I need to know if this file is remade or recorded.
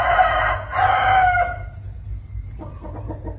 recorded